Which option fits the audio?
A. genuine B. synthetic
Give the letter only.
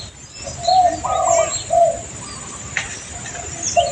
A